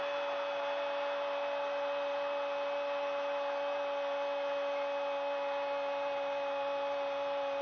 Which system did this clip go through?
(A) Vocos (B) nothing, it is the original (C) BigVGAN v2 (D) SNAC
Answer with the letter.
B